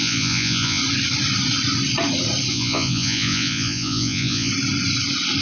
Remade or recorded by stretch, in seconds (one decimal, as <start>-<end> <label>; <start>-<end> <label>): 0.0-0.8 remade; 0.8-2.5 recorded; 2.5-4.5 remade; 4.5-5.4 recorded